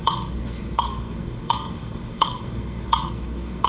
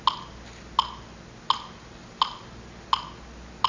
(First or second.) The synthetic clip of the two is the first